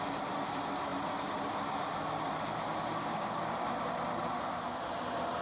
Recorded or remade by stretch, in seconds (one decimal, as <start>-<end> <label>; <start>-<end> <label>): 0.0-3.0 recorded; 3.0-3.6 remade; 3.6-5.4 recorded